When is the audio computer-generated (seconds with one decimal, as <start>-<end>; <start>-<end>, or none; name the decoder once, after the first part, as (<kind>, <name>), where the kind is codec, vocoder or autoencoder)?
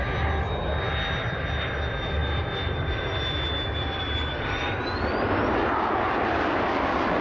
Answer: none